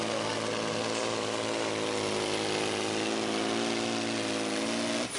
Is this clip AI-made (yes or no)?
no